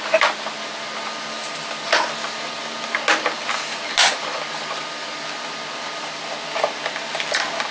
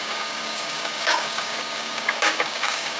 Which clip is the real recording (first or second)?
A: first